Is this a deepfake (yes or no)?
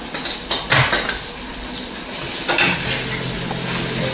no